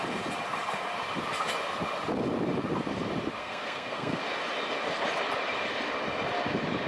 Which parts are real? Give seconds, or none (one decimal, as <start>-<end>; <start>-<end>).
0.0-3.4; 4.2-6.9